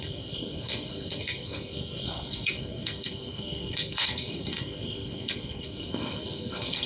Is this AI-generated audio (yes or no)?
yes